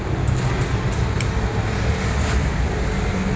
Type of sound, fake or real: real